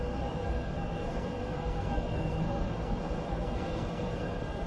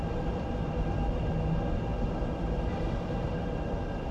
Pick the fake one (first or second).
first